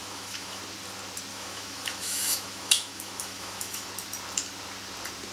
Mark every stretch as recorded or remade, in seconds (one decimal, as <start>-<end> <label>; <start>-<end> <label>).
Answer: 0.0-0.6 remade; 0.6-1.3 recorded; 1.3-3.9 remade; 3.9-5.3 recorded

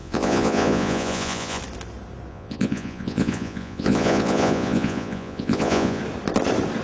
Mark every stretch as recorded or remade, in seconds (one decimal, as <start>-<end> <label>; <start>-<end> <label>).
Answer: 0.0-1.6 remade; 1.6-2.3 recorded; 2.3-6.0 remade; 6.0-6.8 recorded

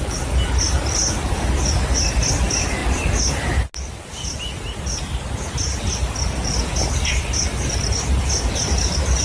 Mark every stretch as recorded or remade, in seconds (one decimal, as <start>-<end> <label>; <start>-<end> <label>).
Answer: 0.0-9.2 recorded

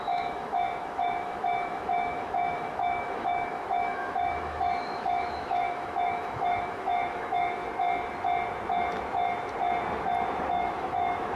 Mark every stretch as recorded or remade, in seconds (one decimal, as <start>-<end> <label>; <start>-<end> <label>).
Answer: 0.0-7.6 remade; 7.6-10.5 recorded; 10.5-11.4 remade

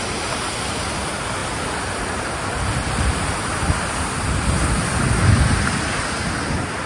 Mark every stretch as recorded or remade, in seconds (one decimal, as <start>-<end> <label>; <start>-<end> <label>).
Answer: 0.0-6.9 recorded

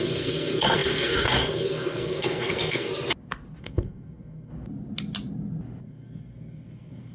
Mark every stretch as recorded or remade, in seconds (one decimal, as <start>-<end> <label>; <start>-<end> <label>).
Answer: 0.0-2.9 remade; 2.9-3.6 recorded; 3.6-4.5 remade; 4.5-5.8 recorded; 5.8-7.1 remade